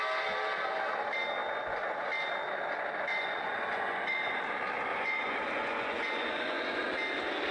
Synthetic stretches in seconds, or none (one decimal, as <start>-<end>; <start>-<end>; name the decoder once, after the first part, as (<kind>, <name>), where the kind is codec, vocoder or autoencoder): 3.1-4.4 (vocoder, Vocos); 4.9-6.8